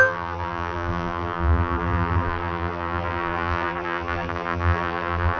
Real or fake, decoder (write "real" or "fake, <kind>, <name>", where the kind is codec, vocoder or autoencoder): fake, vocoder, BigVGAN v2